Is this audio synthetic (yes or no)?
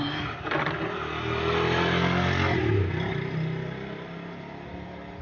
no